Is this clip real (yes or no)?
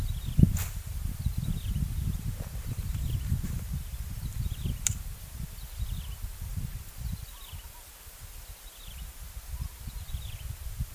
yes